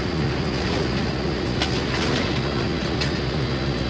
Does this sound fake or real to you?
fake